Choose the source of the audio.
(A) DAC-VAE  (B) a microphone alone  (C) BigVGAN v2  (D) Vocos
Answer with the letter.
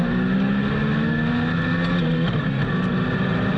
B